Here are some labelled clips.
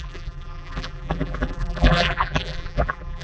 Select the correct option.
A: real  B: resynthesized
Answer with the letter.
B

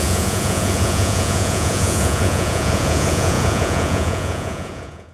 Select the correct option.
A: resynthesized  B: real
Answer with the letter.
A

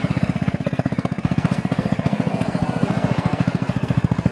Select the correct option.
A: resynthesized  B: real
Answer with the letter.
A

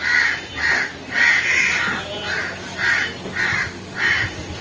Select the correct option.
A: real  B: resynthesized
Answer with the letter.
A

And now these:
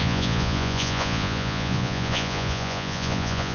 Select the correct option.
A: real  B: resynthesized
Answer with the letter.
B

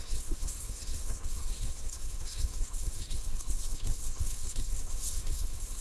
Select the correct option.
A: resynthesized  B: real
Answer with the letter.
A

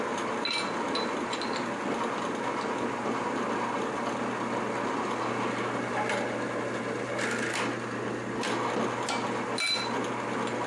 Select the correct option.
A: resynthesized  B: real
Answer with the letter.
B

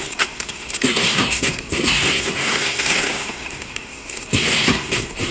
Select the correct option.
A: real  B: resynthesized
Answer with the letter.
B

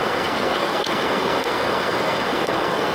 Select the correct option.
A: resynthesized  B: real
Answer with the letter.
A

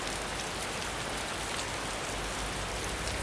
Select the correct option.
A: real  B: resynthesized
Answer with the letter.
A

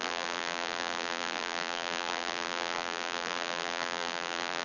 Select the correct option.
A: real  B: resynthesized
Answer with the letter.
B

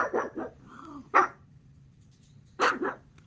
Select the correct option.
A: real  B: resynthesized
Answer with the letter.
B